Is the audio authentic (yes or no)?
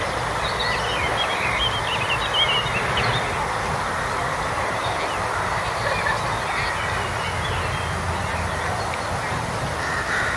yes